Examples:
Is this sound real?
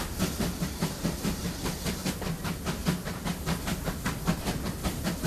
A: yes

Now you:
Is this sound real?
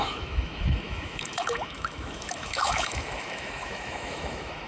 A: no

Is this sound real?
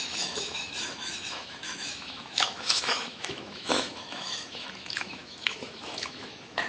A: no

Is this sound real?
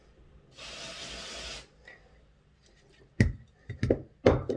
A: yes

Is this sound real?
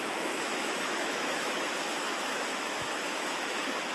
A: no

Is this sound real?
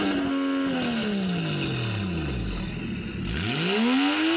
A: yes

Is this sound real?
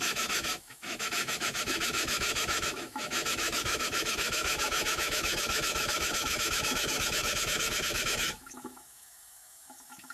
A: no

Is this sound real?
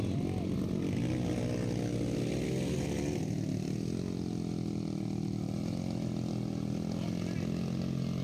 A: yes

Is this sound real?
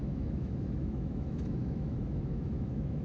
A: no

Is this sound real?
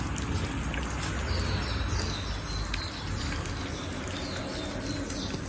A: yes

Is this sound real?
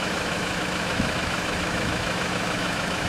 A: no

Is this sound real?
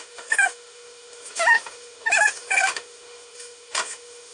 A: no